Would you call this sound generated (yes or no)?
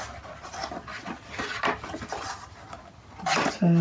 no